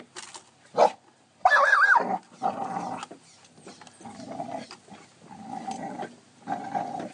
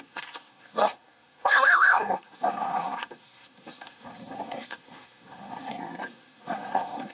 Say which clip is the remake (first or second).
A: second